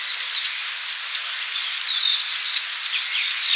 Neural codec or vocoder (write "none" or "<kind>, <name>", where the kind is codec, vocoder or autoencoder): none